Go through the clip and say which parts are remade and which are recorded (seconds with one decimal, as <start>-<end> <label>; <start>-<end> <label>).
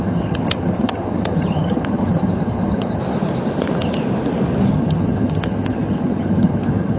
0.0-3.0 remade; 3.0-4.7 recorded; 4.7-7.0 remade